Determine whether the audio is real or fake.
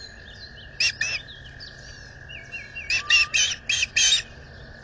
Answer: real